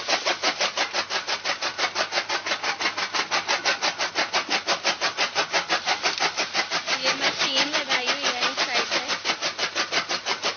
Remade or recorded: recorded